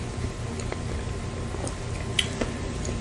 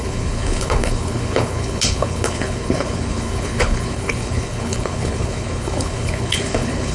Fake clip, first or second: second